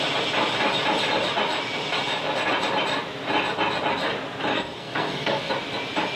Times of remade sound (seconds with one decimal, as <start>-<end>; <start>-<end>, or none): 4.5-5.5